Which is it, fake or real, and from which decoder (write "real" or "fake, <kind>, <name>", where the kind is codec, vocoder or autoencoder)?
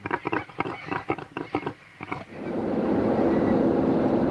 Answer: real